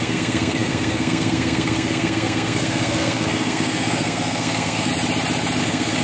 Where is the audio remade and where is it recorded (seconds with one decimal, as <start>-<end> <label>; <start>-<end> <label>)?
0.0-4.9 remade; 4.9-5.6 recorded; 5.6-6.0 remade